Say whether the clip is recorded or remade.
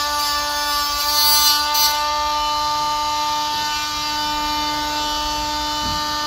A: recorded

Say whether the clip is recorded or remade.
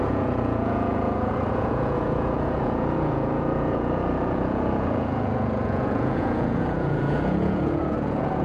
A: remade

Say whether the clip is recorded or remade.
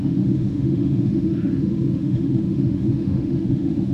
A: remade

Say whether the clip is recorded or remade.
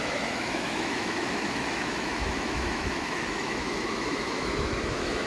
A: remade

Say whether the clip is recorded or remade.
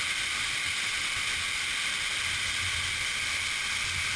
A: recorded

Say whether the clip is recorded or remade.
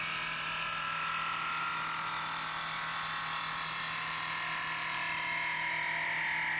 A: recorded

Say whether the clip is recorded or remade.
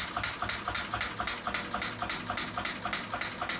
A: recorded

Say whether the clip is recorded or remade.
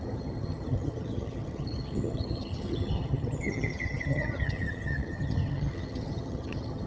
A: remade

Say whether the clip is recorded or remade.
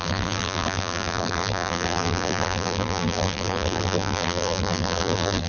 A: remade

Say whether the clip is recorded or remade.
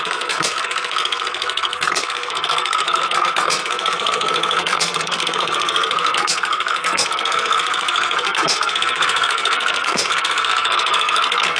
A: remade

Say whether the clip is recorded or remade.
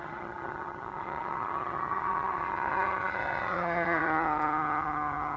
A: remade